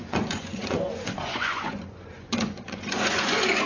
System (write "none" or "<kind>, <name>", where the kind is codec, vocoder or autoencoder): vocoder, Vocos